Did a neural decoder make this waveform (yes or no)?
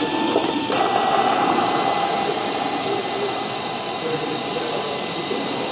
yes